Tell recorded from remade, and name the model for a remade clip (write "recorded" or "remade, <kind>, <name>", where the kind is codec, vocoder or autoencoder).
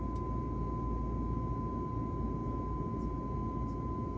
recorded